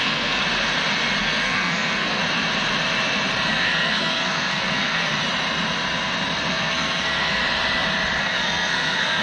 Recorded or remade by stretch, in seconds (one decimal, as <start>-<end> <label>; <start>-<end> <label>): 0.0-0.4 remade; 0.4-1.2 recorded; 1.2-2.2 remade; 2.2-3.5 recorded; 3.5-5.1 remade; 5.1-6.5 recorded; 6.5-7.4 remade; 7.4-8.2 recorded; 8.2-9.2 remade